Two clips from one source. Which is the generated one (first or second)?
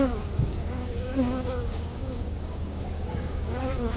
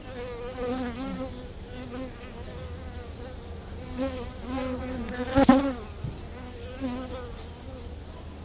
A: first